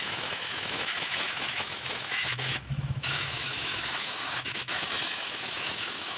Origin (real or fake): fake